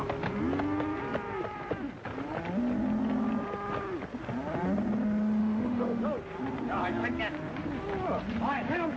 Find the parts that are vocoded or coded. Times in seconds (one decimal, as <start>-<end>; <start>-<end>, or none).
5.4-6.0